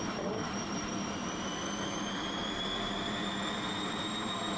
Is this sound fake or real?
fake